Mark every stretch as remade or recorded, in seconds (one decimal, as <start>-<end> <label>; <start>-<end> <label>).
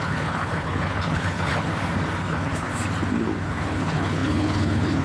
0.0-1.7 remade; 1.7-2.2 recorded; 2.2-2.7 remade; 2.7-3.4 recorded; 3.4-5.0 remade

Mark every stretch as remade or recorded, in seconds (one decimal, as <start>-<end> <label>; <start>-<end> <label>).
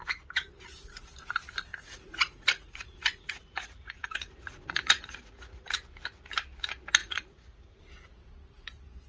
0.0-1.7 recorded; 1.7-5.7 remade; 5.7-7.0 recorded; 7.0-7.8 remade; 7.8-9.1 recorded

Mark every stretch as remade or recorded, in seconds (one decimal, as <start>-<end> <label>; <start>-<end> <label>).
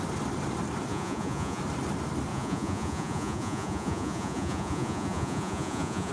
0.0-0.9 recorded; 0.9-1.6 remade; 1.6-2.3 recorded; 2.3-6.1 remade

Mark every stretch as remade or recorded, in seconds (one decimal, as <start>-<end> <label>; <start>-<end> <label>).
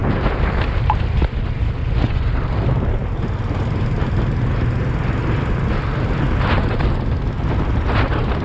0.0-1.8 recorded; 1.8-2.4 remade; 2.4-8.4 recorded